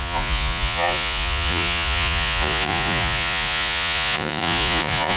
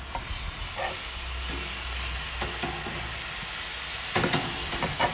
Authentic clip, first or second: second